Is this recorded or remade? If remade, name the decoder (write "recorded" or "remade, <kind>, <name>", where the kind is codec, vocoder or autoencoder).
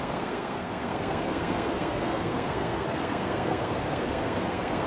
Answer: remade, codec, SNAC